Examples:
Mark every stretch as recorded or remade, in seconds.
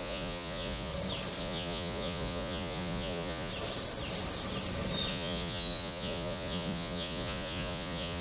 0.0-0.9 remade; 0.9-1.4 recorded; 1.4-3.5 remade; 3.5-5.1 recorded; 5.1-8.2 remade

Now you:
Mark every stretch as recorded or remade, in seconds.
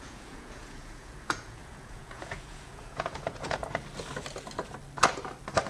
0.0-3.6 remade; 3.6-5.7 recorded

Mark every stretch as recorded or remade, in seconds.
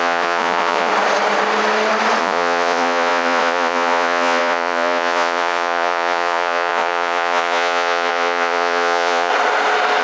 0.0-0.9 remade; 0.9-2.2 recorded; 2.2-9.3 remade; 9.3-10.0 recorded